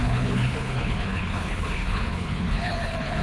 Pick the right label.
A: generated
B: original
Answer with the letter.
A